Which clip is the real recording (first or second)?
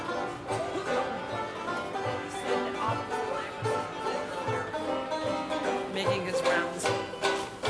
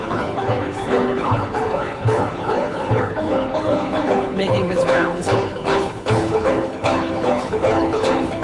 first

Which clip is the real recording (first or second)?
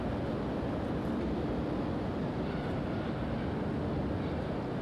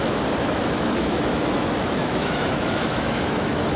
first